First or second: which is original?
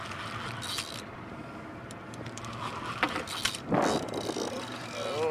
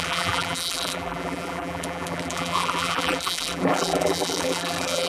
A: first